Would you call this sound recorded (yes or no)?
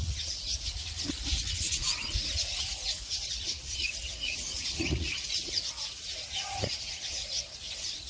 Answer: no